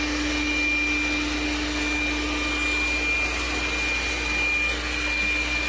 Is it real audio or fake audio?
real